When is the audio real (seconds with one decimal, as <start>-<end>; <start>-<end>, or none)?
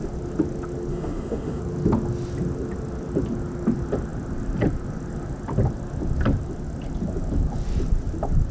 0.0-0.9; 1.6-8.5